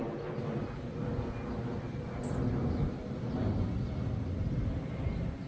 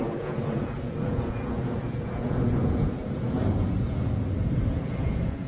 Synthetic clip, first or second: second